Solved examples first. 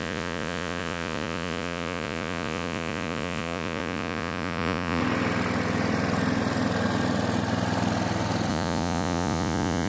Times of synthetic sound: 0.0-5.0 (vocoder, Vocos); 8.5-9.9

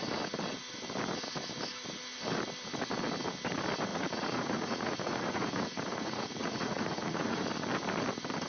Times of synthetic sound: 3.9-7.4 (vocoder, Vocos)

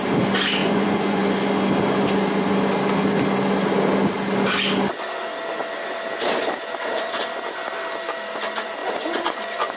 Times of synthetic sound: 0.6-1.2 (vocoder, Vocos); 8.8-9.8